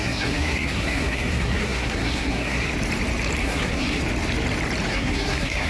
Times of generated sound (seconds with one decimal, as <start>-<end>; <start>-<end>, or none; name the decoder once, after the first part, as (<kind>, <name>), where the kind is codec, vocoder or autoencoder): 0.0-2.7 (codec, SNAC); 3.4-4.0; 4.9-5.7